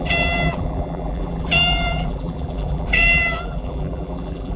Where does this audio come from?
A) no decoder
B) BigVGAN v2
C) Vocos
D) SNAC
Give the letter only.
B